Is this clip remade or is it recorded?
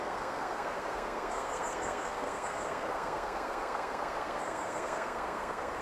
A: remade